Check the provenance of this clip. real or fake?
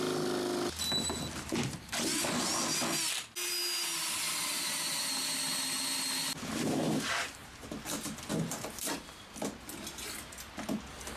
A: real